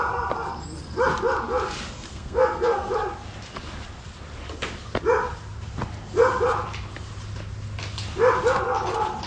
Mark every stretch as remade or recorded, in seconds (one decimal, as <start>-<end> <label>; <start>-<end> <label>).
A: 0.0-2.1 recorded; 2.1-2.9 remade; 2.9-9.3 recorded